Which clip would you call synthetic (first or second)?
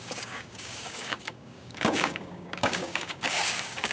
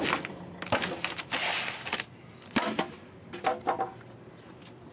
first